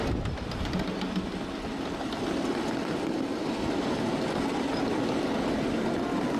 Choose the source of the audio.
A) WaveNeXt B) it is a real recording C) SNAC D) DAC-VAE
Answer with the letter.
B